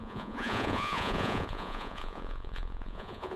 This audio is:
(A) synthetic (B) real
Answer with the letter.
A